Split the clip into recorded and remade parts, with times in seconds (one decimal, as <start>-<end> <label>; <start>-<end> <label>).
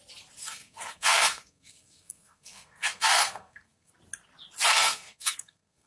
0.0-0.4 recorded; 0.4-3.9 remade; 3.9-4.7 recorded; 4.7-5.9 remade